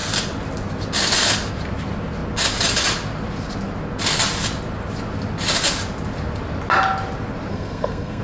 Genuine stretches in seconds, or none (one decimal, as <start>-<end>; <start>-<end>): 0.0-7.5